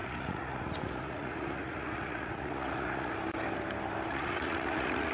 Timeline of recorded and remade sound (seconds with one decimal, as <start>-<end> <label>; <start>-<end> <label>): 0.0-3.1 remade; 3.1-4.1 recorded; 4.1-5.1 remade